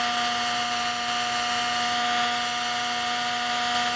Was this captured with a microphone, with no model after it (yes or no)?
yes